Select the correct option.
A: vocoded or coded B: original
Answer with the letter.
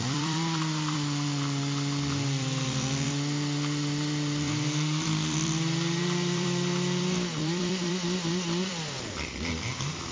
A